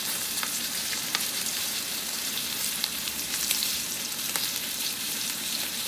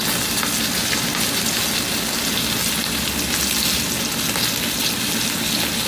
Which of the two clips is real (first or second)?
second